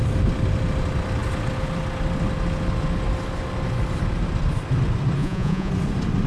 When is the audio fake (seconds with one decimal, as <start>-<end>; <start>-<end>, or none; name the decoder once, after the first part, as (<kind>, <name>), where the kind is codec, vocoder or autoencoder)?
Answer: 5.2-5.7 (vocoder, Vocos)